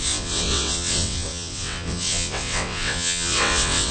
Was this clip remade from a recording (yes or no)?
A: yes